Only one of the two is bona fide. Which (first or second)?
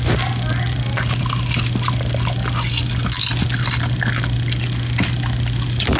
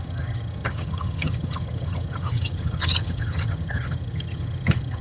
first